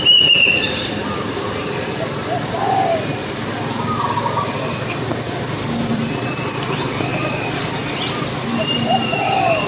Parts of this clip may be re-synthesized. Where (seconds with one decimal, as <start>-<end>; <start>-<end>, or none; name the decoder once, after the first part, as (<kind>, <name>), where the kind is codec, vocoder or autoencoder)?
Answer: 0.0-3.2 (vocoder, BigVGAN v2); 5.9-7.8; 8.6-9.7